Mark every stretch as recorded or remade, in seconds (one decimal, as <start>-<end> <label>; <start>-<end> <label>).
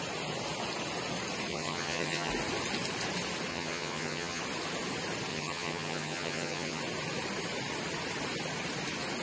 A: 0.0-1.5 recorded; 1.5-2.3 remade; 2.3-3.5 recorded; 3.5-4.4 remade; 4.4-5.3 recorded; 5.3-6.8 remade; 6.8-9.2 recorded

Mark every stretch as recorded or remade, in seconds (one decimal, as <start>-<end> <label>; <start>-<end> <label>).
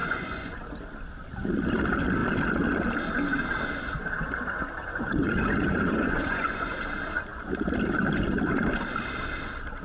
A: 0.0-0.6 remade; 0.6-4.8 recorded; 4.8-6.8 remade; 6.8-9.8 recorded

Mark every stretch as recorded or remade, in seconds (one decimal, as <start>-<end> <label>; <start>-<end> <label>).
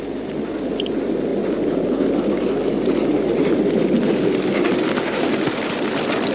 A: 0.0-6.3 recorded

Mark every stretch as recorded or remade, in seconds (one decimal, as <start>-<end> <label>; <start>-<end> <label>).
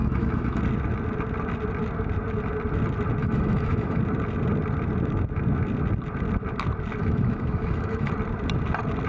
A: 0.0-0.6 remade; 0.6-3.2 recorded; 3.2-4.0 remade; 4.0-7.0 recorded; 7.0-8.1 remade; 8.1-9.1 recorded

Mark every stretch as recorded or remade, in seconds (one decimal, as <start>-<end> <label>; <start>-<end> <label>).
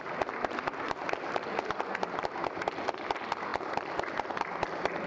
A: 0.0-5.1 recorded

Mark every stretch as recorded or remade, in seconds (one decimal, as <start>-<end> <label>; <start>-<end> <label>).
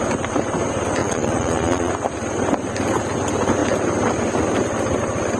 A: 0.0-1.0 recorded; 1.0-1.9 remade; 1.9-5.4 recorded